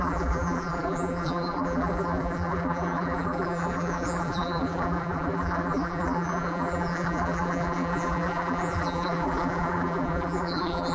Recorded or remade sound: remade